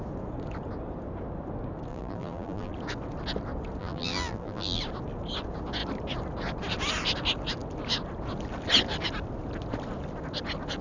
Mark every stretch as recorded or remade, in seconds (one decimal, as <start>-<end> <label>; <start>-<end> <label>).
0.0-1.9 recorded; 1.9-2.7 remade; 2.7-3.8 recorded; 3.8-4.8 remade; 4.8-10.8 recorded